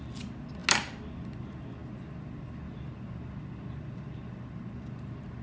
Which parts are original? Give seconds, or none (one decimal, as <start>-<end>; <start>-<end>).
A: 0.0-5.4